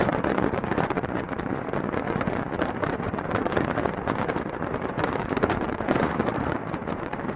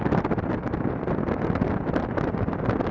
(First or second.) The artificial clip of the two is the first